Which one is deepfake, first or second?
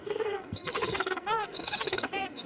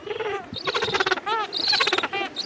first